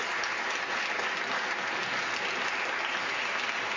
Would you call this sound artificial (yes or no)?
no